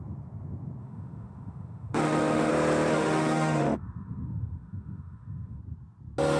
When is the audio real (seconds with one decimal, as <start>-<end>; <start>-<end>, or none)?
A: 0.0-0.8; 2.5-2.9; 5.6-6.4